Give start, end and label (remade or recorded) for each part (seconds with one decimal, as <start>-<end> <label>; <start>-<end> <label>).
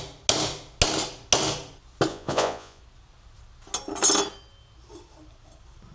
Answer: 0.0-2.1 recorded; 2.1-2.8 remade; 2.8-5.9 recorded